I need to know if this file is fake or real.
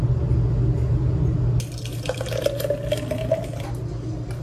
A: real